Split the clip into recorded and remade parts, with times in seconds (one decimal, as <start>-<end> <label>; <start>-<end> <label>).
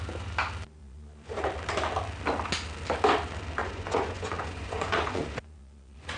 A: 0.0-0.8 recorded; 0.8-1.4 remade; 1.4-3.6 recorded; 3.6-6.2 remade